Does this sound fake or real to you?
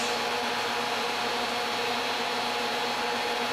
real